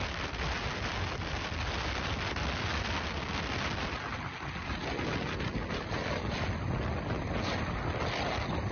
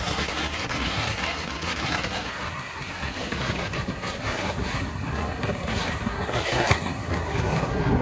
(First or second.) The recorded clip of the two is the first